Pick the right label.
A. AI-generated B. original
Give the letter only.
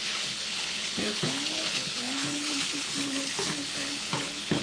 A